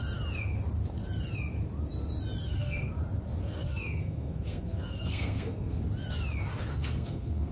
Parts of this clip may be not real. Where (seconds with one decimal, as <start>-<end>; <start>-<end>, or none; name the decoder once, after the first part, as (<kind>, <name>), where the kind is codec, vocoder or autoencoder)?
2.4-2.9 (codec, SNAC); 3.4-5.8; 6.5-7.5